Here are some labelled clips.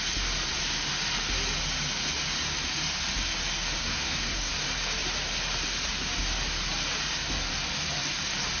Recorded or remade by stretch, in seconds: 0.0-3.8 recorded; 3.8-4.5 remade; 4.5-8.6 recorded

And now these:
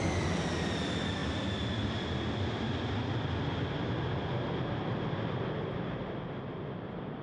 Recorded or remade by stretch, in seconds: 0.0-7.2 recorded